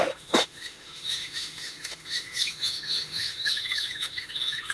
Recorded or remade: remade